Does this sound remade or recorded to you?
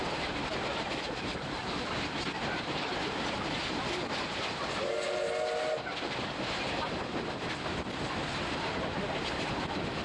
recorded